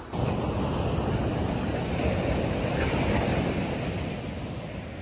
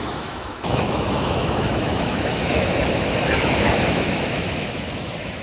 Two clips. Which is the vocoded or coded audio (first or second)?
second